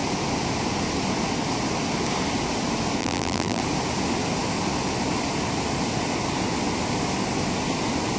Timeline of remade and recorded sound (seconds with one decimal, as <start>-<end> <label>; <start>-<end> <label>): 0.0-3.0 recorded; 3.0-3.6 remade; 3.6-8.2 recorded